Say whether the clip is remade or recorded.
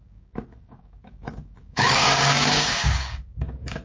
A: remade